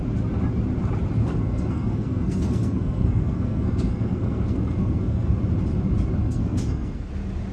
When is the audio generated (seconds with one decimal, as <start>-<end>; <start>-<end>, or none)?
1.2-5.4; 6.2-7.1